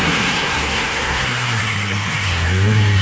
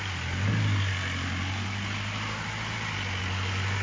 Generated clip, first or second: first